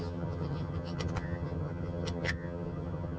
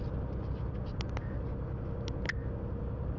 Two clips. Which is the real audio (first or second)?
second